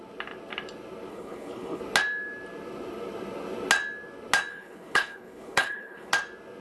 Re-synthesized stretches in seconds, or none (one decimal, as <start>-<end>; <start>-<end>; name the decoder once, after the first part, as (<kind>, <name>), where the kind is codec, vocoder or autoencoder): 1.1-1.8 (codec, HILCodec); 4.5-6.1